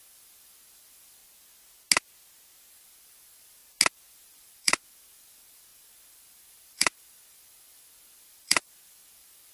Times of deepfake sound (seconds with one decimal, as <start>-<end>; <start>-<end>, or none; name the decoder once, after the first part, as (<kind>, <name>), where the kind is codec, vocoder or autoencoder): 0.0-1.2 (vocoder, BigVGAN v2); 2.7-3.6; 4.1-9.5